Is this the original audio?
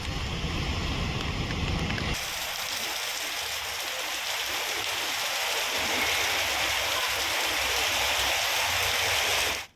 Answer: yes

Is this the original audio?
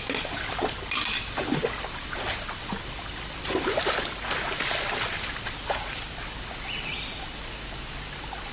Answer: yes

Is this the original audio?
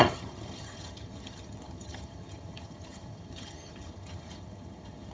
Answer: no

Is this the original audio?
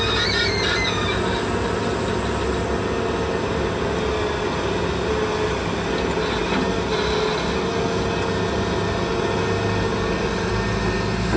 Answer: yes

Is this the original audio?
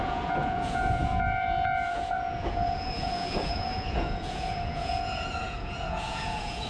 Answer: no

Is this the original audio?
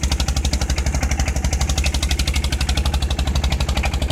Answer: yes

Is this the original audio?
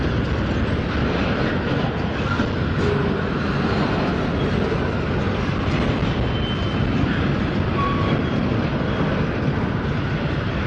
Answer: yes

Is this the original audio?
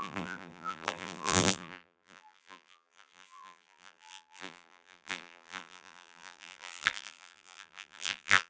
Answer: no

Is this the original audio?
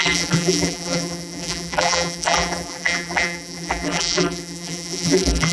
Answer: no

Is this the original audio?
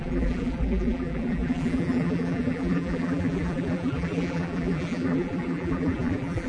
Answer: no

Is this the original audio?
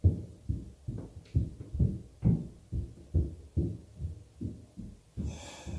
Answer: yes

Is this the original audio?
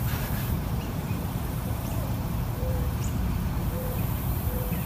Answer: no